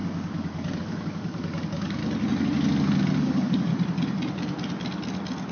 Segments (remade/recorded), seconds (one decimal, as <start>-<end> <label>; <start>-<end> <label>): 0.0-2.0 remade; 2.0-3.2 recorded; 3.2-3.7 remade; 3.7-5.5 recorded